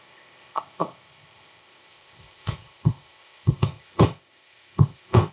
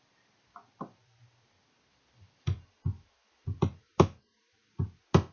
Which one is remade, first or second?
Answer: first